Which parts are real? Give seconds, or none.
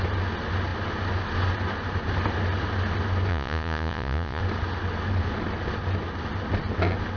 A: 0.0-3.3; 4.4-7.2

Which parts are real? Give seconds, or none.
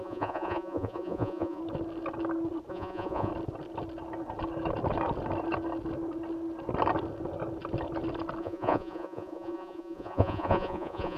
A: 1.6-2.7; 3.3-8.4